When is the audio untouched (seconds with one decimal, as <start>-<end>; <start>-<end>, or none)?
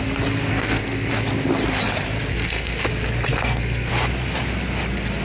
0.0-0.5; 1.1-2.3; 2.8-3.3; 3.9-5.2